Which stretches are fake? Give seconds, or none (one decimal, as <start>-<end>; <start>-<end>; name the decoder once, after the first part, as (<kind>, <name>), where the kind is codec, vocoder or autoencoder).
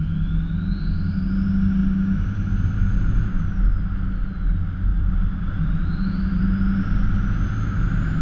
4.9-6.4 (vocoder, BigVGAN v2)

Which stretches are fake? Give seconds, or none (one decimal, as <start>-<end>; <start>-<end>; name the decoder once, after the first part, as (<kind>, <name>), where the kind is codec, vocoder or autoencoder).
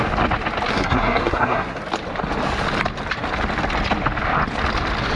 0.7-1.8 (codec, SNAC)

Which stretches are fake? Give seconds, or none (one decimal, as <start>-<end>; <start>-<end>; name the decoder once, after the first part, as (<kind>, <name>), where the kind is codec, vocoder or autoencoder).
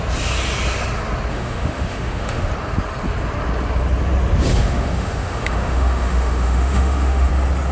1.3-2.5 (autoencoder, DAC-VAE); 4.5-7.3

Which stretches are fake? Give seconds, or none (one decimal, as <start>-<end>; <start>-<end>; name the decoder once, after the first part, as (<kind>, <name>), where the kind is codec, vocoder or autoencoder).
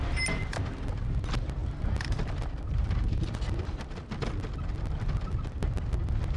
1.6-4.1 (vocoder, BigVGAN v2)